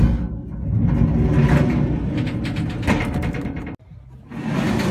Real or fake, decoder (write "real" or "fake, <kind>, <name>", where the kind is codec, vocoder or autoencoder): real